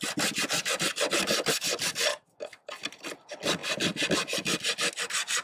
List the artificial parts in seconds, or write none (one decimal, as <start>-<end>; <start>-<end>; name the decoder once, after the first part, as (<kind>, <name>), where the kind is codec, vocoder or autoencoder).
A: 2.1-2.7 (codec, DAC)